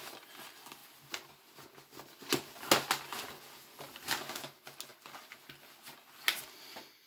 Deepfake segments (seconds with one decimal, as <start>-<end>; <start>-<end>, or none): none